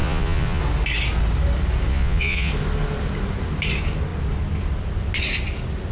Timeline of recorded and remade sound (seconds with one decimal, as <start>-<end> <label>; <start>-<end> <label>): 0.0-0.6 remade; 0.6-1.9 recorded; 1.9-2.5 remade; 2.5-5.9 recorded